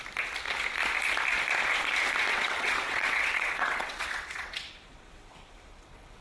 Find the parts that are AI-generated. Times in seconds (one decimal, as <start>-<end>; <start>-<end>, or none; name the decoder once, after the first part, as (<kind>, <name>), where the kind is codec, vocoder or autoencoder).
2.3-6.2 (vocoder, WaveNeXt)

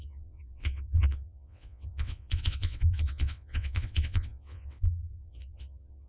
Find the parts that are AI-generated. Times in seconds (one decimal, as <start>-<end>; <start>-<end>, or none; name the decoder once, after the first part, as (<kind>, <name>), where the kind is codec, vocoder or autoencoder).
0.0-6.1 (vocoder, WaveNeXt)

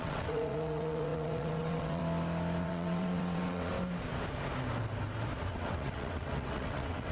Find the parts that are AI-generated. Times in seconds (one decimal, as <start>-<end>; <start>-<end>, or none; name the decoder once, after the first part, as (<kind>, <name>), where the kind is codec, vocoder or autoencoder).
0.0-2.0 (vocoder, WaveNeXt); 2.6-3.7; 5.5-7.1